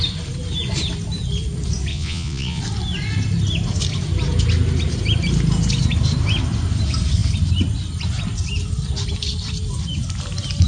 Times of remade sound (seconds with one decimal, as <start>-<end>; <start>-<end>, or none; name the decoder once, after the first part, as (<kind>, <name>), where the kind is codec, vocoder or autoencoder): 1.9-2.6 (vocoder, Vocos)